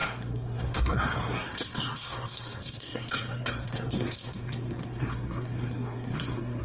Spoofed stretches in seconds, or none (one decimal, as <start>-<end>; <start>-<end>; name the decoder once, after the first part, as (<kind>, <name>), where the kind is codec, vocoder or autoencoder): 0.0-6.6 (codec, SNAC)